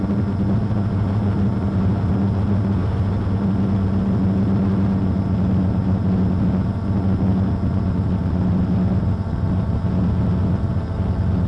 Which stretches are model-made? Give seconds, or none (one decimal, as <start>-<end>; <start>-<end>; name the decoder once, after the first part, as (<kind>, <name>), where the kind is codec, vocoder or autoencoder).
none